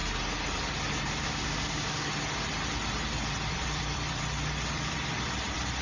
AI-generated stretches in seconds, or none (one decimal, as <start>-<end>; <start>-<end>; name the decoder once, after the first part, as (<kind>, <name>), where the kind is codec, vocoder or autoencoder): 3.5-5.8 (vocoder, BigVGAN v2)